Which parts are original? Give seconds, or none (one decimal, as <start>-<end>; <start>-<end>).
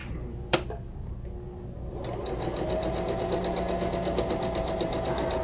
0.0-5.4